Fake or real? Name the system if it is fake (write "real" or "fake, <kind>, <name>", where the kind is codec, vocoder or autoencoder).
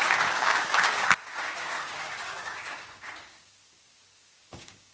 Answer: fake, codec, DAC